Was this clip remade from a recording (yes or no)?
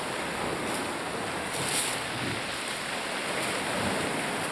no